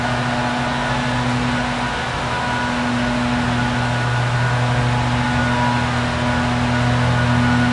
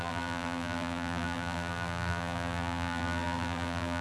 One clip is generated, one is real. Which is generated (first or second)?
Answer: second